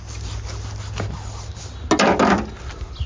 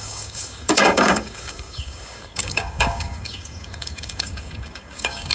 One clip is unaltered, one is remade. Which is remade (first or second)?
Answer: second